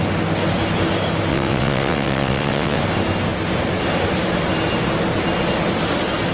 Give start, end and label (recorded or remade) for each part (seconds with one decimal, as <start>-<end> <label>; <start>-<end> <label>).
0.0-1.3 recorded; 1.3-2.8 remade; 2.8-6.3 recorded